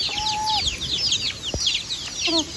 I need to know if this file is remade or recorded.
recorded